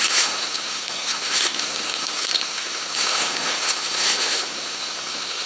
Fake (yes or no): yes